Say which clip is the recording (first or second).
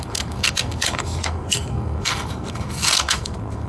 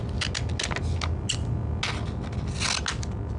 second